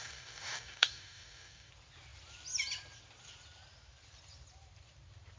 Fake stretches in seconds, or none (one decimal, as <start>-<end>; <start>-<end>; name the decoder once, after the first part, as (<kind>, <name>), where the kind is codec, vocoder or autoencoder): 0.0-1.7 (codec, DAC)